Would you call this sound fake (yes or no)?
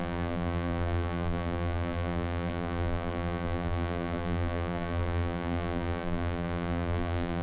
yes